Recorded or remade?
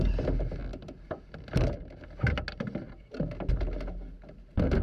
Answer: recorded